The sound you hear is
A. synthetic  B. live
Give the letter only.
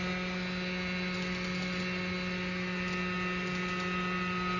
B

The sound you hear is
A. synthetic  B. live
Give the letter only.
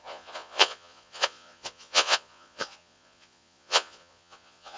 A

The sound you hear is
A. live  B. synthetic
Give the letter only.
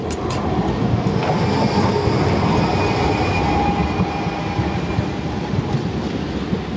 A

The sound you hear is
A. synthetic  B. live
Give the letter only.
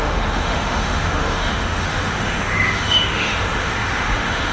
A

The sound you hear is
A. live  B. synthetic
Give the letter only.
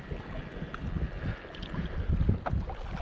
A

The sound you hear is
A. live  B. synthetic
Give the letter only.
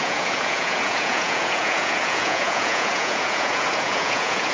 B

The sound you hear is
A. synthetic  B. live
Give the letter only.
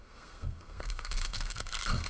A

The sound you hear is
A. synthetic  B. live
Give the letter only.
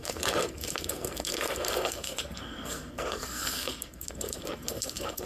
A